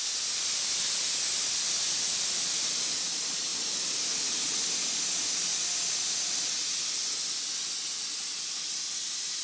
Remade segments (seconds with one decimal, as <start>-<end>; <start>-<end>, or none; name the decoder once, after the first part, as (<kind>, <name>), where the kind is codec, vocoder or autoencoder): 3.5-4.1 (vocoder, BigVGAN v2)